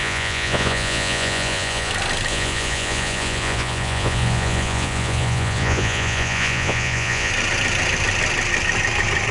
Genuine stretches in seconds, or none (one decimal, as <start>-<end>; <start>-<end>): 1.9-2.3; 7.3-9.3